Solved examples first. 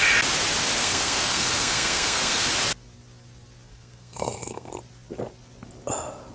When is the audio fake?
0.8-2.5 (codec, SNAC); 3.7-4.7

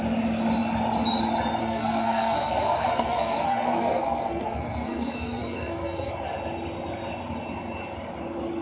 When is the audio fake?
1.6-6.1 (codec, SNAC)

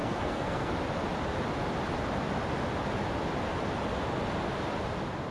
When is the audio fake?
0.0-0.7 (codec, SNAC)

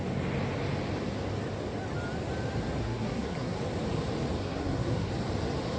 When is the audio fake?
2.8-3.6 (codec, SNAC); 4.4-5.1

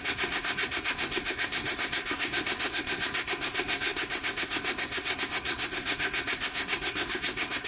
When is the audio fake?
0.0-7.7 (codec, SNAC)

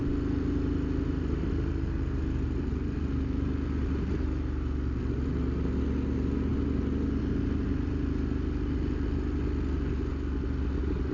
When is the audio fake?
none

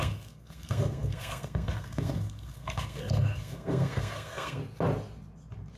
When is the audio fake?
0.0-4.6 (codec, SNAC)